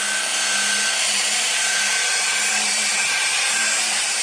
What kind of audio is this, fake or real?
real